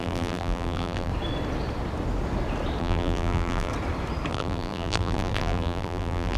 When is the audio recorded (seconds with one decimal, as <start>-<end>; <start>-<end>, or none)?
1.1-2.8; 3.7-4.3

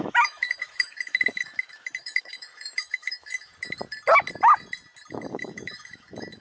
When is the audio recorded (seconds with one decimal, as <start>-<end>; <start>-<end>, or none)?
3.5-5.1

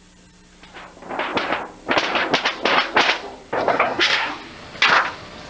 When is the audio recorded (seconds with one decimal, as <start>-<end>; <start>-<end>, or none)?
0.0-3.7; 4.3-5.5

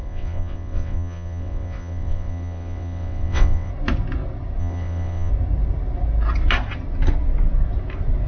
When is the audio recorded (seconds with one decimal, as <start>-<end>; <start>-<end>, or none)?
3.7-4.6; 5.3-8.3

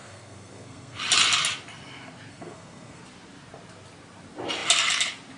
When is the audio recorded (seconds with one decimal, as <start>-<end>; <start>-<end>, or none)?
1.0-2.3; 3.0-5.4

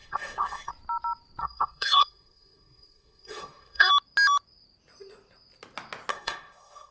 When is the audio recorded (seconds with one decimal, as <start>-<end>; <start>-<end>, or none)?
0.7-1.4; 3.9-6.1